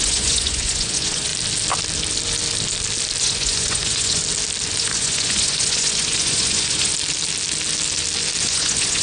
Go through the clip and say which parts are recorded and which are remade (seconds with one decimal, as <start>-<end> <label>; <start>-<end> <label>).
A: 0.0-1.3 remade; 1.3-3.2 recorded; 3.2-4.2 remade; 4.2-4.8 recorded; 4.8-6.9 remade; 6.9-8.4 recorded; 8.4-9.0 remade